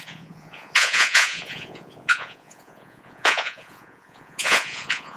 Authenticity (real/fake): fake